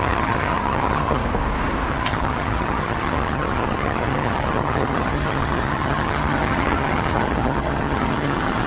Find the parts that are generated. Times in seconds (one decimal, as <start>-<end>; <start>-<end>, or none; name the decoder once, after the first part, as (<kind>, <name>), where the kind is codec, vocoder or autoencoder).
0.0-1.2 (vocoder, HiFi-GAN); 1.9-8.7